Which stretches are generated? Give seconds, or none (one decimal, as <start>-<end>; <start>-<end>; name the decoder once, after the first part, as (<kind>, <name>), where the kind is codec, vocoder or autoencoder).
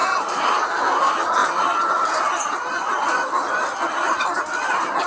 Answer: 0.0-0.5 (vocoder, BigVGAN v2); 1.4-4.5